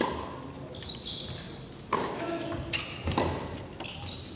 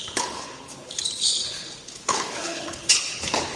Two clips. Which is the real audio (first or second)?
first